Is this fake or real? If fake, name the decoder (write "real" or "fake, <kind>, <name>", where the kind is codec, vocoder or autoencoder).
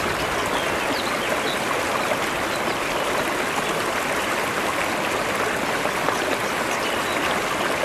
real